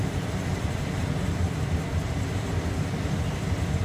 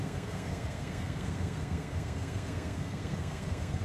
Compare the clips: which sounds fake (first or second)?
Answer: second